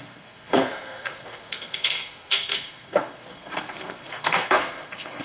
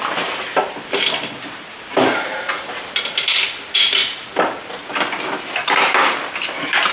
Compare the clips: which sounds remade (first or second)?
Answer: first